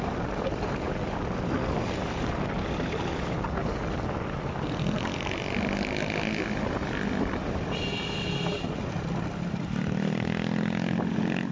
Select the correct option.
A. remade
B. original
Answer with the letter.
B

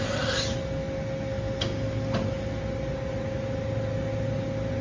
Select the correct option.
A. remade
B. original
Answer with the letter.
B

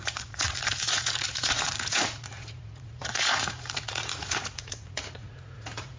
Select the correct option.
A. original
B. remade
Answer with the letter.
B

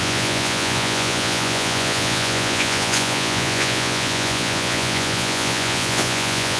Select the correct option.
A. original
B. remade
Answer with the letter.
B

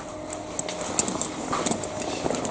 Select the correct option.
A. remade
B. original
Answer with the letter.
B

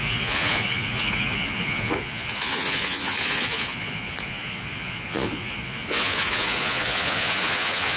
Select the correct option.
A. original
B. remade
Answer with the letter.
B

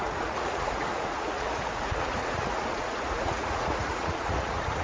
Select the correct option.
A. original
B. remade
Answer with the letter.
B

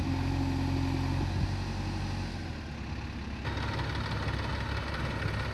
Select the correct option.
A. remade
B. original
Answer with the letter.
B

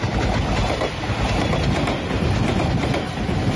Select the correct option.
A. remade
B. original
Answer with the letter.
B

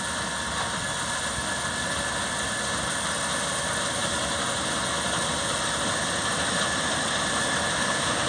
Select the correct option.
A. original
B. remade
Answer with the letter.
A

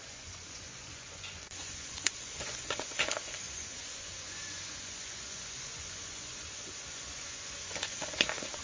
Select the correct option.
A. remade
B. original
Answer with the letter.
A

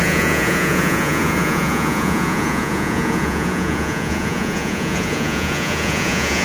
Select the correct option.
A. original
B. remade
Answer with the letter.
B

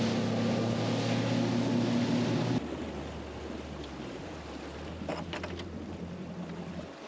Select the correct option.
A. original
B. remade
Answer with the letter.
A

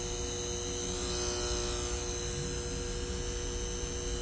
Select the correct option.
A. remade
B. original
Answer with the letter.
B